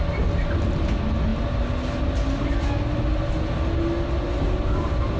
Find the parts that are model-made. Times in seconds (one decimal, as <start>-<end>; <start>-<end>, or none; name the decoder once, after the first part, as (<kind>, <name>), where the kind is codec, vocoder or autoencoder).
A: none